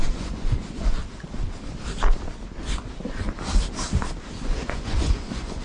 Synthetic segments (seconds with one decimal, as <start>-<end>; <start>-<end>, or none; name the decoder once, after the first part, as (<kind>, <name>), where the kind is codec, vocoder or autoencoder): 0.0-1.0 (vocoder, Vocos); 4.4-5.6